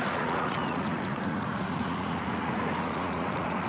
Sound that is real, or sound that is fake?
fake